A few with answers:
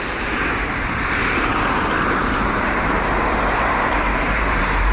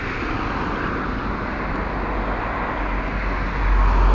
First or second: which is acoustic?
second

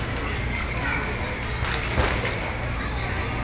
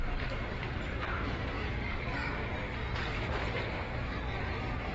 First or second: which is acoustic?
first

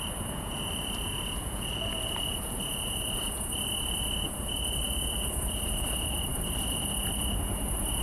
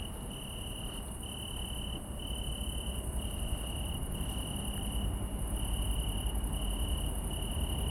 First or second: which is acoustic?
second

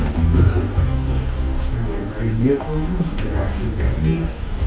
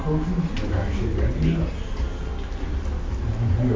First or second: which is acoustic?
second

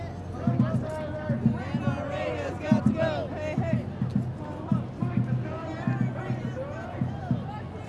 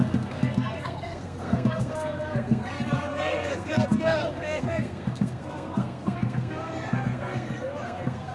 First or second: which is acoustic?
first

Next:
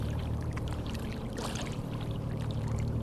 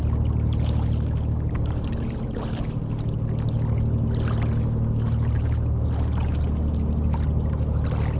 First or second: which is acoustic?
second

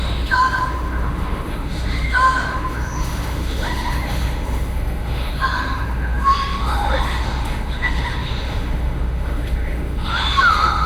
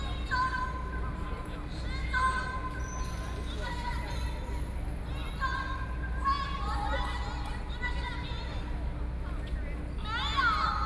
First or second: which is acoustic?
second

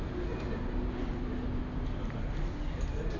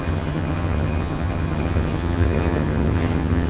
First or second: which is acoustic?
first